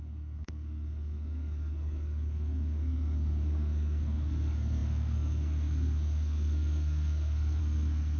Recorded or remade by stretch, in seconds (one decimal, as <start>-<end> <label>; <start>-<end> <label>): 0.0-8.2 remade